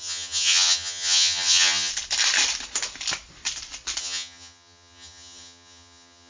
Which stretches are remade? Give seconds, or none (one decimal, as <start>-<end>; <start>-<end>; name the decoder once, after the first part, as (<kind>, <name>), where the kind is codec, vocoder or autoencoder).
0.0-1.9 (vocoder, HiFi-GAN); 4.0-6.3